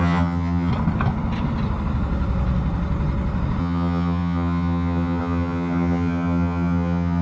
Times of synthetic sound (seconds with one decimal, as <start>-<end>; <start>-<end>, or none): 0.0-0.7; 3.6-7.2